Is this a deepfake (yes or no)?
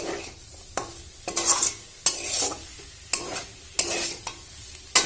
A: no